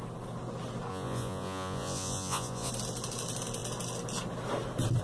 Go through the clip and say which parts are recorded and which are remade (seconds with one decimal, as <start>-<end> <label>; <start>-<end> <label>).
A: 0.0-0.9 recorded; 0.9-2.7 remade; 2.7-5.0 recorded